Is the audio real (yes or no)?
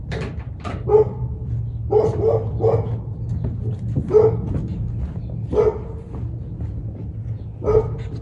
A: yes